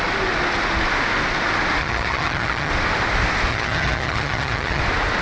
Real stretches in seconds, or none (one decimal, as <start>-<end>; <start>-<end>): 0.0-1.8; 2.7-3.5; 4.8-5.2